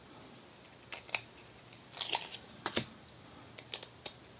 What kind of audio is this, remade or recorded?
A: recorded